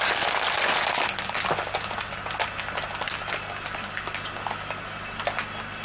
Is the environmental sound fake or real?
real